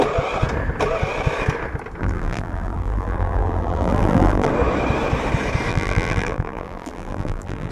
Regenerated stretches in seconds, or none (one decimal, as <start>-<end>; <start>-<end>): 2.0-4.5; 5.7-7.7